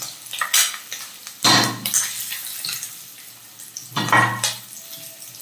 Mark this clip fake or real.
real